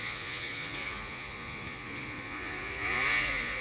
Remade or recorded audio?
remade